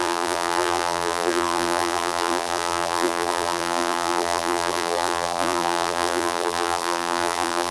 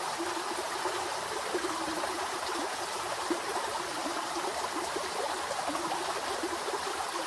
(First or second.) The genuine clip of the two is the second